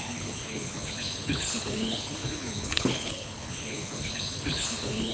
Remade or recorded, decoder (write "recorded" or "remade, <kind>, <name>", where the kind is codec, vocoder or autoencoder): remade, codec, HILCodec